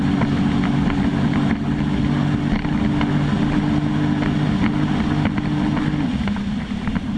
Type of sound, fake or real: real